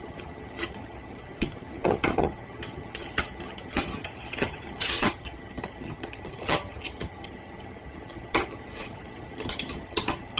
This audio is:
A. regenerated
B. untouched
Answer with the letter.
A